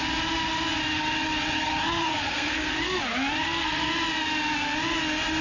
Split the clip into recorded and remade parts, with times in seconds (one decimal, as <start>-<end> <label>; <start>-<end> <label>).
0.0-2.0 recorded; 2.0-3.0 remade; 3.0-3.4 recorded; 3.4-3.9 remade; 3.9-5.4 recorded